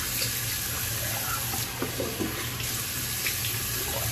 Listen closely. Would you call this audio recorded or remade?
recorded